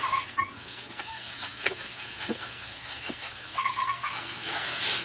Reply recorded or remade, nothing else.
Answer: remade